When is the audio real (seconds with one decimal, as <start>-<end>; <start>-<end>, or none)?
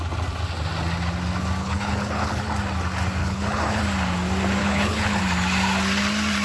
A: 0.0-1.6; 2.4-3.2; 3.8-4.6; 5.2-6.4